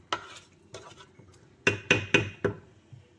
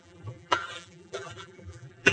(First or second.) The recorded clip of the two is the first